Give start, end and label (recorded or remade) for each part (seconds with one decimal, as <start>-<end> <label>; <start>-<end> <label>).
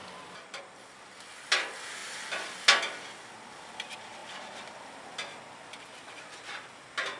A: 0.0-7.2 recorded